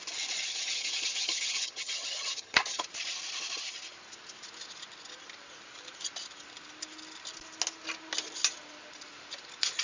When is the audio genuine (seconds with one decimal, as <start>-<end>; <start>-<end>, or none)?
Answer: 0.0-0.5; 2.8-9.8